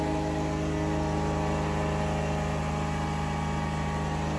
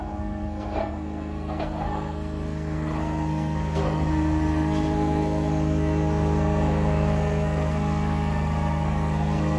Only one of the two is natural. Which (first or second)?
first